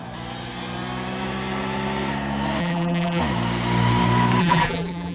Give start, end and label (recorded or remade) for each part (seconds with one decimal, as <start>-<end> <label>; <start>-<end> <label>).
0.0-2.6 recorded; 2.6-3.2 remade; 3.2-4.4 recorded; 4.4-5.1 remade